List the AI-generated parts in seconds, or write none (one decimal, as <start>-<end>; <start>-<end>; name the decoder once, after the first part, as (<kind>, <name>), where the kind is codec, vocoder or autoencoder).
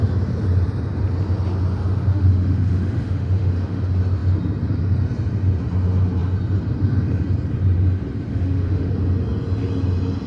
2.1-3.8 (autoencoder, DAC-VAE); 8.3-8.9